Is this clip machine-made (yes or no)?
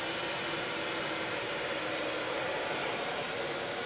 yes